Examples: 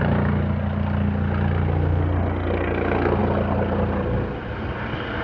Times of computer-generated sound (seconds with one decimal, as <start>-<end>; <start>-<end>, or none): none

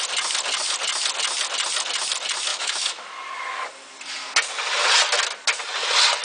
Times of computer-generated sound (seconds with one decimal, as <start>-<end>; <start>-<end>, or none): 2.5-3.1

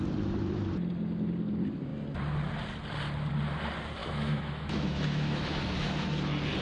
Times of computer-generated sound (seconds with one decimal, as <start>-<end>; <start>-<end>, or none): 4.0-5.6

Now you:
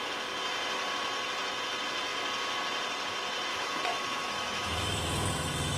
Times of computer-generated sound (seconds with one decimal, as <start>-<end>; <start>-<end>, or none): 3.5-5.8